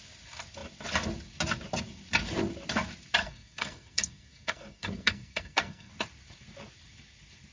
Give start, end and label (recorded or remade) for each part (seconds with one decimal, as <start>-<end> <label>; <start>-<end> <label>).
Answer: 0.0-3.2 recorded; 3.2-5.9 remade; 5.9-7.5 recorded